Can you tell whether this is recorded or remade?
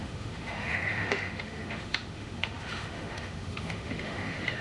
remade